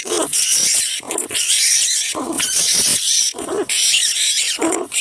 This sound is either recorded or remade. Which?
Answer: remade